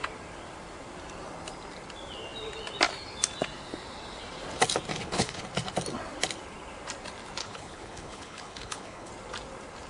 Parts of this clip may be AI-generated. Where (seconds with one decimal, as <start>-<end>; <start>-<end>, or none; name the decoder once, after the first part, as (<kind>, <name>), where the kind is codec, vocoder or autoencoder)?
4.9-5.4 (codec, HILCodec); 7.4-9.1